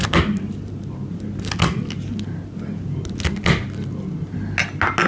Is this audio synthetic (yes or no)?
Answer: no